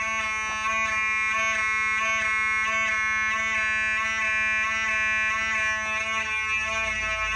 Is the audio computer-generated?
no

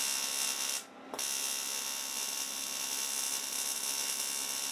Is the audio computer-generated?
no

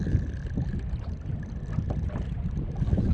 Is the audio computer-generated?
no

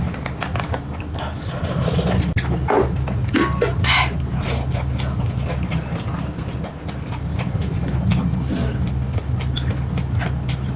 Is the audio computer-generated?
no